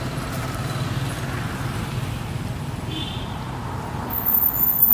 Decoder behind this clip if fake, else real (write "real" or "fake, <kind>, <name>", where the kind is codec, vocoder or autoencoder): real